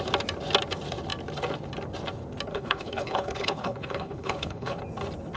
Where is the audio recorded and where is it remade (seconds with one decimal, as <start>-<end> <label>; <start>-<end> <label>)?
0.0-2.5 recorded; 2.5-4.8 remade; 4.8-5.4 recorded